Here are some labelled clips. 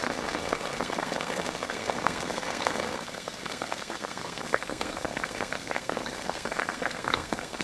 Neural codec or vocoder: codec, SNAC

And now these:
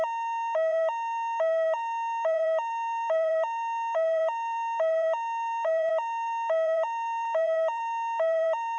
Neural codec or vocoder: vocoder, BigVGAN v2